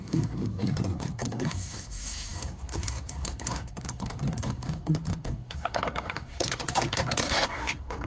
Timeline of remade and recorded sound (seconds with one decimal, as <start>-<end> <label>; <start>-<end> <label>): 0.0-8.1 remade